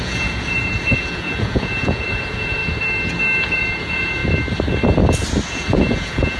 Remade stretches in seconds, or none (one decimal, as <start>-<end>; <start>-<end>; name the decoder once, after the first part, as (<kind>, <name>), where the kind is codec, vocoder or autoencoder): 0.0-2.6 (vocoder, Vocos); 3.4-4.2; 5.5-6.4